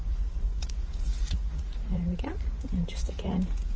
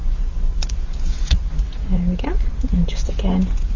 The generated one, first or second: first